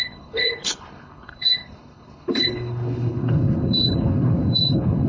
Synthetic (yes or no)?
yes